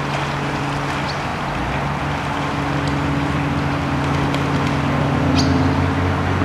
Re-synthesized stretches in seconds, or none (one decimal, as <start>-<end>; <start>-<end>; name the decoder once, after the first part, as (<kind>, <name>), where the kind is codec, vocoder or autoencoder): none